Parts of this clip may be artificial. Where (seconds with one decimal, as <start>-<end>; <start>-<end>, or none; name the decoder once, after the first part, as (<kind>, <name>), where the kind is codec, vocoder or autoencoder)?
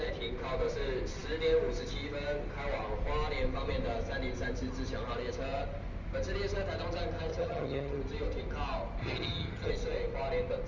7.3-8.0 (vocoder, HiFi-GAN); 9.0-9.7